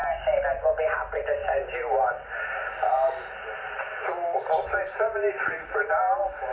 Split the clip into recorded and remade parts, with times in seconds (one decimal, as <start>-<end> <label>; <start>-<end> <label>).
0.0-6.5 recorded